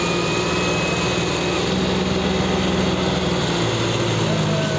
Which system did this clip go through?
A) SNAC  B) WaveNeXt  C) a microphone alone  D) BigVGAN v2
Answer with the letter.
C